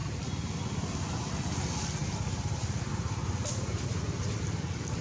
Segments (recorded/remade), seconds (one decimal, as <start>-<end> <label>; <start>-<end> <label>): 0.0-1.1 remade; 1.1-2.0 recorded; 2.0-5.0 remade